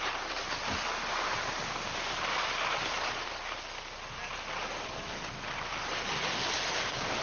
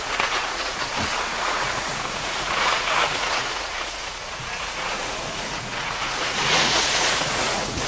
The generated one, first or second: second